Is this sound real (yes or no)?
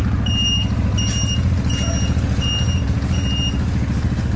yes